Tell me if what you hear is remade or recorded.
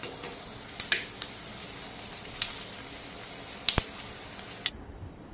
recorded